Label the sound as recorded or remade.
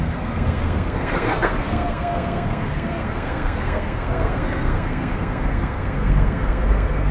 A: remade